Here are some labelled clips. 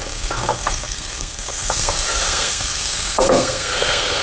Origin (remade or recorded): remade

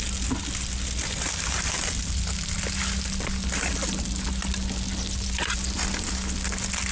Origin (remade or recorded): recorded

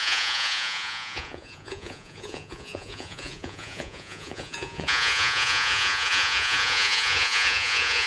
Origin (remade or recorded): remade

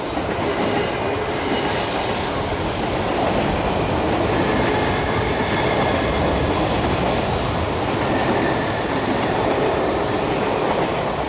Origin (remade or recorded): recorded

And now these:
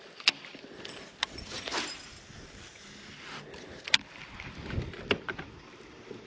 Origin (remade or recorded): recorded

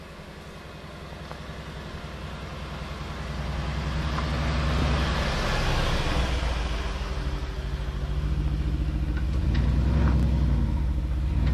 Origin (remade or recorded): recorded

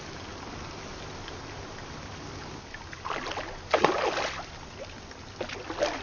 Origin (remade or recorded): recorded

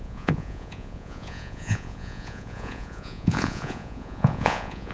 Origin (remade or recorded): remade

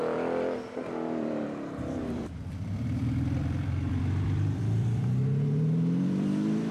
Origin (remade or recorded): remade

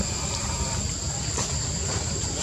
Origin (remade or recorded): recorded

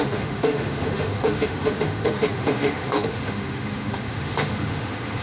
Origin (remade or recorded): remade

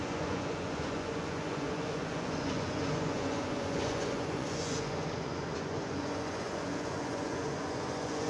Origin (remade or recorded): remade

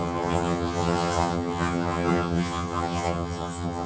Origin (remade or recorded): remade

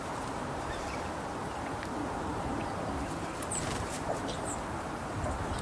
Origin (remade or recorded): remade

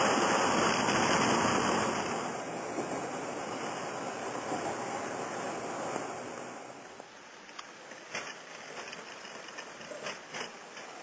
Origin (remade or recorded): recorded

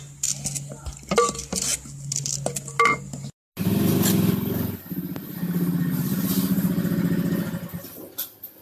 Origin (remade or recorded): recorded